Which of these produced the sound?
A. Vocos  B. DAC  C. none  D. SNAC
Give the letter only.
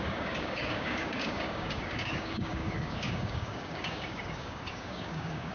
B